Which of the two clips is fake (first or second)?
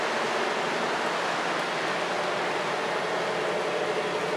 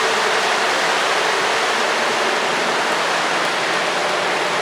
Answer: second